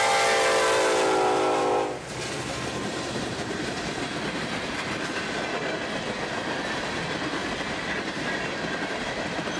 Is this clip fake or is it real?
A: real